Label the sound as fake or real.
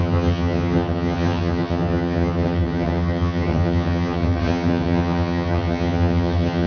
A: fake